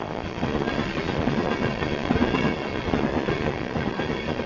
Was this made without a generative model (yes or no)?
no